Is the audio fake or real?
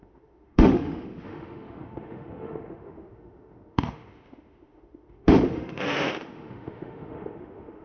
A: fake